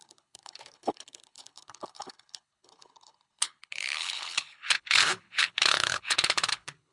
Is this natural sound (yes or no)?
no